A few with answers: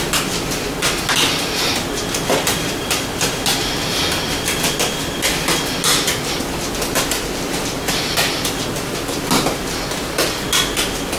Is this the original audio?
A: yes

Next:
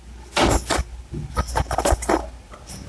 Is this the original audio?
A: yes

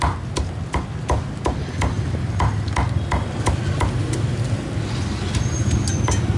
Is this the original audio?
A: yes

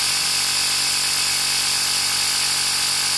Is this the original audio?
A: yes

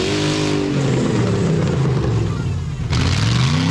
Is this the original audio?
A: yes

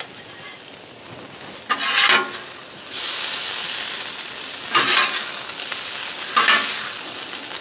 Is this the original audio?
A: yes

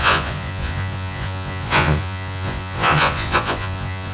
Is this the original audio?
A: no